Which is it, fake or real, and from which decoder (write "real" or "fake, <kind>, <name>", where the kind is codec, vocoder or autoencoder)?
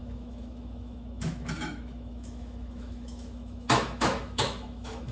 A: fake, autoencoder, DAC-VAE